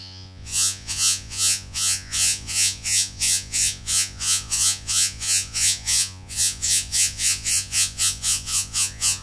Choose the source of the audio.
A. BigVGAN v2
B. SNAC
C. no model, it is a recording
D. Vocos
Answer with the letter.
D